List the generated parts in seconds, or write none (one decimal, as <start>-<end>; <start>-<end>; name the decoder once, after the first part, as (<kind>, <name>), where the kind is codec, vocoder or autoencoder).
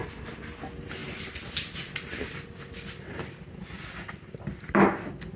0.0-0.6 (vocoder, BigVGAN v2); 1.0-1.5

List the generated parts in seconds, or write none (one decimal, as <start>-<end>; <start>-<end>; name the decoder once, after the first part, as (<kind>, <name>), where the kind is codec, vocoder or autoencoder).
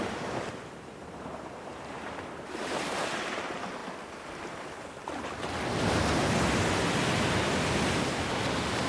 0.0-3.8 (vocoder, BigVGAN v2); 8.3-8.9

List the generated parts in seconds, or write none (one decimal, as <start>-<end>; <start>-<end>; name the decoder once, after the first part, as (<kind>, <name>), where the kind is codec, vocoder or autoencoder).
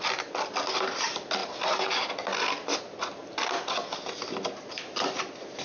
1.4-2.1 (vocoder, BigVGAN v2)